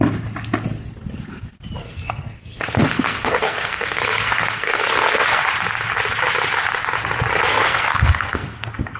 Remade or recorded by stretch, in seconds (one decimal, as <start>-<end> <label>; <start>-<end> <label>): 0.0-1.8 recorded; 1.8-5.4 remade; 5.4-7.5 recorded; 7.5-9.0 remade